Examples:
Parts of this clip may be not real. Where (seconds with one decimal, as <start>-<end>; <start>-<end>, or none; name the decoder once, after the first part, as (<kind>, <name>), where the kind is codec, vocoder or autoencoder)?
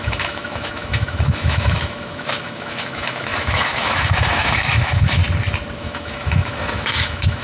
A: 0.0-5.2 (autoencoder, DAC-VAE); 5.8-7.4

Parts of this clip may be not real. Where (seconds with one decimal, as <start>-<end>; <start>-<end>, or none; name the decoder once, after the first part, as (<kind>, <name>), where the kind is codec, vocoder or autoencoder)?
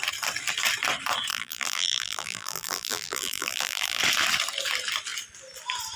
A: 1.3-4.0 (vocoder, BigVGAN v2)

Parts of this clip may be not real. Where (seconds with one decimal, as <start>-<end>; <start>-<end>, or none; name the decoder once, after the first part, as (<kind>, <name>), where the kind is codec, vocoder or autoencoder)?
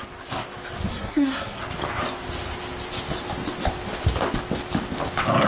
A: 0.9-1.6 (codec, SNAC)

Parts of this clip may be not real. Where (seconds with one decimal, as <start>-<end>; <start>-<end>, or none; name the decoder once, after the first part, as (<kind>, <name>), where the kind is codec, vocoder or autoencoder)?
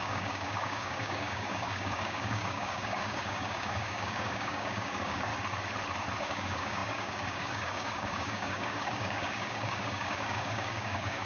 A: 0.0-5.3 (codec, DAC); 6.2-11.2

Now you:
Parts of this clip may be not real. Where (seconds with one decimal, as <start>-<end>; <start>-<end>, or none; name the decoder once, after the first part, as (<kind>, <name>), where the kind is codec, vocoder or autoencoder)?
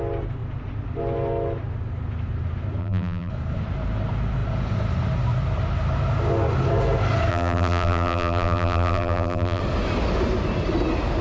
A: 2.8-3.3 (vocoder, BigVGAN v2); 7.3-9.6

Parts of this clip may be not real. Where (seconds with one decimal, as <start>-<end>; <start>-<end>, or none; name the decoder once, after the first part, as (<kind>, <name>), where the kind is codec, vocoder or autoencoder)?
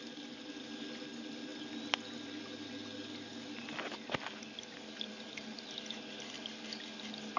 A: none